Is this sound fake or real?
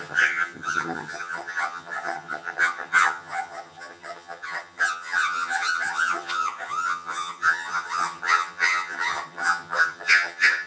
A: fake